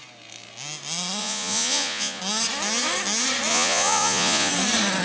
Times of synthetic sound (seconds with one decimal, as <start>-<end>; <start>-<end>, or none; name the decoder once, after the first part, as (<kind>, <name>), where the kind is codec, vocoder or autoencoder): 1.2-2.2 (vocoder, Vocos); 3.5-4.5